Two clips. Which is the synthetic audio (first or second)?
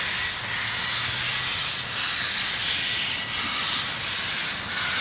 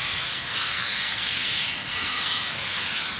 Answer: second